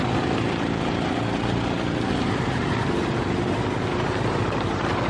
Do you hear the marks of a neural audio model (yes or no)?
no